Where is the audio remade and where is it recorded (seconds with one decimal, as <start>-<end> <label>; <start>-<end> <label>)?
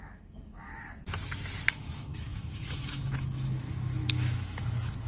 0.0-0.7 remade; 0.7-1.7 recorded; 1.7-5.1 remade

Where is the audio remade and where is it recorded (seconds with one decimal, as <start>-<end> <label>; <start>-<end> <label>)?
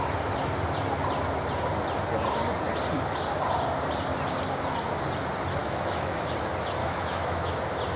0.0-5.6 recorded; 5.6-6.3 remade; 6.3-6.8 recorded; 6.8-7.5 remade; 7.5-8.0 recorded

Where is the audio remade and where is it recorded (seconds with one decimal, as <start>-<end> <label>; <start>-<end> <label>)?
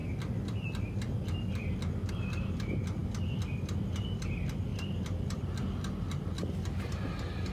0.0-7.5 recorded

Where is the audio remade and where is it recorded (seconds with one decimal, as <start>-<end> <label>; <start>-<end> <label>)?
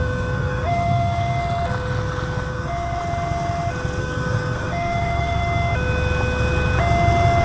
0.0-1.4 remade; 1.4-2.5 recorded; 2.5-3.0 remade; 3.0-4.0 recorded; 4.0-5.4 remade; 5.4-7.4 recorded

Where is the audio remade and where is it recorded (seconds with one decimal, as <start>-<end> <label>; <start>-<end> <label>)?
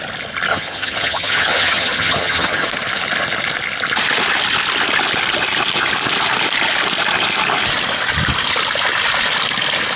0.0-0.5 recorded; 0.5-2.7 remade; 2.7-10.0 recorded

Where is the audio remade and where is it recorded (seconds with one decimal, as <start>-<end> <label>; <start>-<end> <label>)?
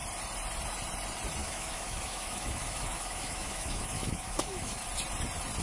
0.0-1.4 recorded; 1.4-4.8 remade; 4.8-5.6 recorded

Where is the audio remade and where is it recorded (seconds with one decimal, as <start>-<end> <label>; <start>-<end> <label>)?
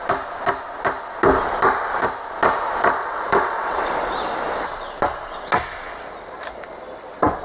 0.0-3.0 recorded; 3.0-3.9 remade; 3.9-7.4 recorded